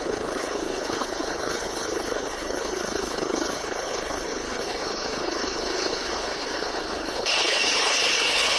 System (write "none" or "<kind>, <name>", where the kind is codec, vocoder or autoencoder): codec, HILCodec